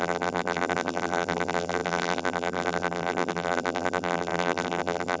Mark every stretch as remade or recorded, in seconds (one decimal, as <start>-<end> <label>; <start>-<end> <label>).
0.0-5.2 remade